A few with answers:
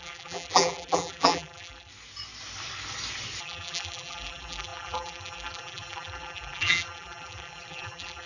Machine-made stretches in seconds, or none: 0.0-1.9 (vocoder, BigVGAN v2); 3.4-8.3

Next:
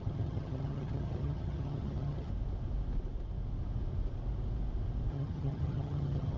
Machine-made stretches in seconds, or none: 0.0-2.3 (vocoder, HiFi-GAN); 5.1-6.4

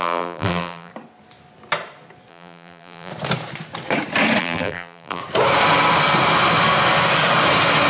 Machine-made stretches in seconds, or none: 0.0-0.9 (vocoder, BigVGAN v2); 2.3-3.1; 4.4-5.2

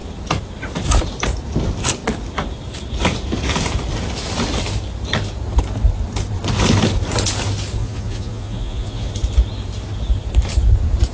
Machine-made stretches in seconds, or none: 7.8-9.1 (vocoder, Vocos)

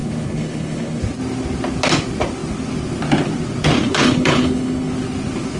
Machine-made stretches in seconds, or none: 0.0-1.0 (codec, HILCodec); 3.9-4.9

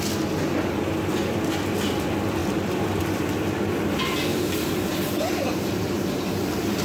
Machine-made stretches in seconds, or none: 2.4-3.0 (vocoder, BigVGAN v2); 4.3-6.8

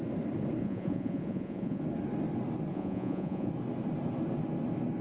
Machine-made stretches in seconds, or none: 0.6-1.8 (vocoder, Vocos); 2.7-3.5

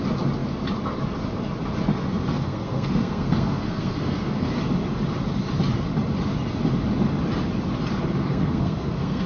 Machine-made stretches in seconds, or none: 2.2-4.5 (codec, SNAC); 8.2-9.3